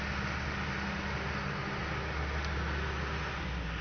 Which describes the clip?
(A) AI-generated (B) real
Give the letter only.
B